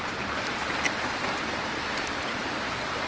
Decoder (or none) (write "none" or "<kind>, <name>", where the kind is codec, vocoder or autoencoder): none